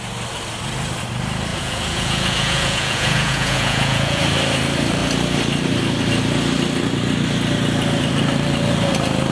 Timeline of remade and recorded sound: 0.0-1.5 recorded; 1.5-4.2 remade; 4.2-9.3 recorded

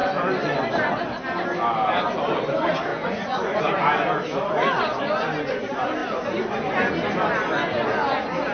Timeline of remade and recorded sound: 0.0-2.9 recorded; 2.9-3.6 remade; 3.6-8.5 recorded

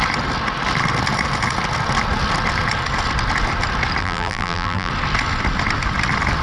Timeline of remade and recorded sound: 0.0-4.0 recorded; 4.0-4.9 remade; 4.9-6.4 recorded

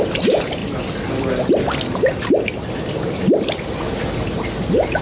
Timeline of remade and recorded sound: 0.0-5.0 recorded

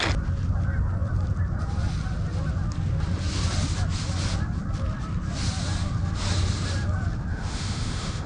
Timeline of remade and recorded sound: 0.0-7.3 recorded; 7.3-8.3 remade

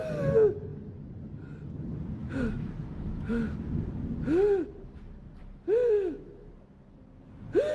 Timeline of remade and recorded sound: 0.0-2.2 recorded; 2.2-3.9 remade; 3.9-5.4 recorded; 5.4-6.5 remade; 6.5-7.7 recorded